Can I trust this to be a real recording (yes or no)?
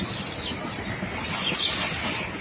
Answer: yes